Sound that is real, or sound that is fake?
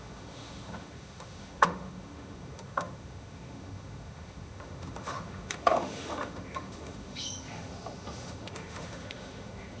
fake